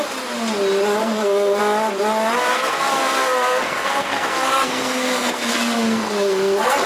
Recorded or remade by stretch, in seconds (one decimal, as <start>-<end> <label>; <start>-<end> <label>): 0.0-1.0 recorded; 1.0-1.6 remade; 1.6-2.5 recorded; 2.5-6.9 remade